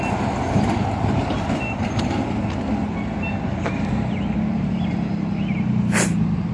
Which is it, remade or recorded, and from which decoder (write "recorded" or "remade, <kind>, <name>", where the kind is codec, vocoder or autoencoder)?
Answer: recorded